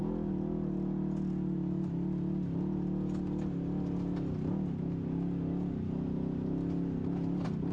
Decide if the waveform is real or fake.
real